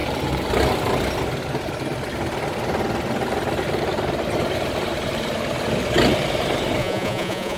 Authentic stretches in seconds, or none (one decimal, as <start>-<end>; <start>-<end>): 0.0-6.8